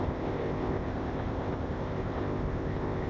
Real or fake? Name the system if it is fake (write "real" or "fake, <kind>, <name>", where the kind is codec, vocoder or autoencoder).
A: fake, codec, ZipCodec